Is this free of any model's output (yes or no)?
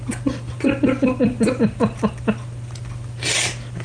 yes